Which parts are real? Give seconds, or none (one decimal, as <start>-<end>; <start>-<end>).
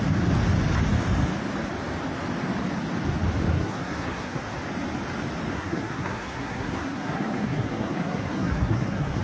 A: 0.0-3.5; 4.4-5.5